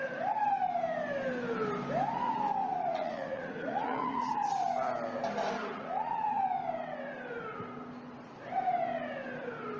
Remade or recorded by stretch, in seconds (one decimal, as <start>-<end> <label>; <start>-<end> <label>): 0.0-2.6 recorded; 2.6-4.3 remade; 4.3-5.6 recorded; 5.6-6.4 remade; 6.4-9.8 recorded